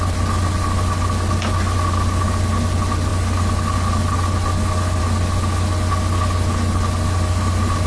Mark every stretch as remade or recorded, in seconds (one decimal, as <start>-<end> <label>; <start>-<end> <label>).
0.0-7.9 recorded